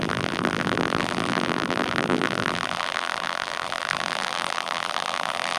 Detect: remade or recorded remade